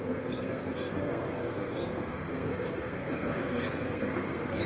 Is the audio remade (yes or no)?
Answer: yes